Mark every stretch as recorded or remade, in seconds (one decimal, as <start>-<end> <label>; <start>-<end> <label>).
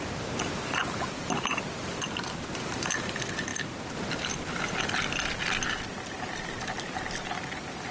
0.0-7.9 recorded